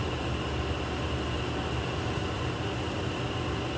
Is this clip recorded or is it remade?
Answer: recorded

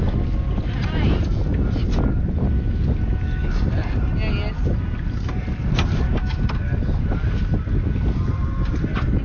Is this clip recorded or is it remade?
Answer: recorded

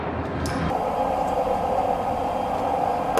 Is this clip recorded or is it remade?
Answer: recorded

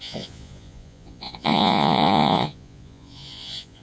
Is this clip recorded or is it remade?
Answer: remade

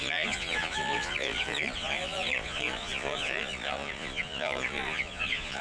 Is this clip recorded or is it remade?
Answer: remade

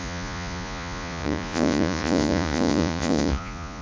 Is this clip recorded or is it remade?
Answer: remade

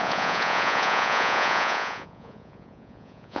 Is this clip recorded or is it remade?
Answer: remade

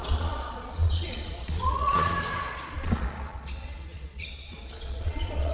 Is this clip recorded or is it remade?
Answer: remade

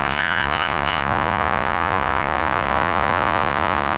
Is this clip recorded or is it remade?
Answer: remade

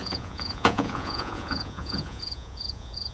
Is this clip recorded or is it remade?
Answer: remade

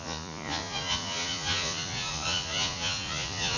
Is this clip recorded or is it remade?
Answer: remade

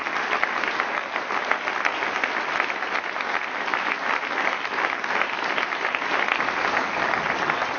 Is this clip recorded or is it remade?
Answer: recorded